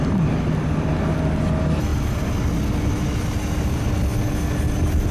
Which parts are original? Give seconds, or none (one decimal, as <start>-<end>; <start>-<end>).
0.0-5.1